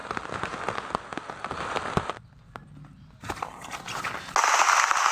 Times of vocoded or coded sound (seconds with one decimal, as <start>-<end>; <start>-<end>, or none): 0.0-0.6